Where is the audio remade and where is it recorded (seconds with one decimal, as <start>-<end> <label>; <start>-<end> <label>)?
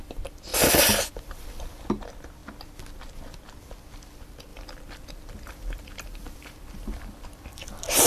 0.0-4.5 recorded; 4.5-8.1 remade